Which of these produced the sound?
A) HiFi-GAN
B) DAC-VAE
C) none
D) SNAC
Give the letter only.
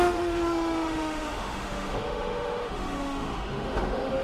B